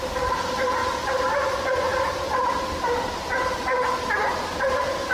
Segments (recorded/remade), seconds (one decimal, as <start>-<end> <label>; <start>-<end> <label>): 0.0-5.1 recorded